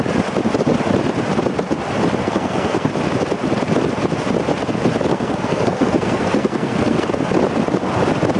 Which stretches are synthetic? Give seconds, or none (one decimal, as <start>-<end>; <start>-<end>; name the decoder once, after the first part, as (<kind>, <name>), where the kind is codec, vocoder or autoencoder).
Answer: 2.2-2.9 (codec, SNAC); 5.1-7.1